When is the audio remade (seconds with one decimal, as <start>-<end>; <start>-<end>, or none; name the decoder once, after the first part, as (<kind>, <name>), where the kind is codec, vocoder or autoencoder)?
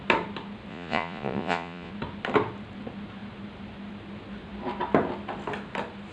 0.7-1.9 (vocoder, Vocos)